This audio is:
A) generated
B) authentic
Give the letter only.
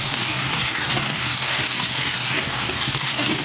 A